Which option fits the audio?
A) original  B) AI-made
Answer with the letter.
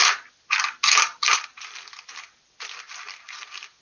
A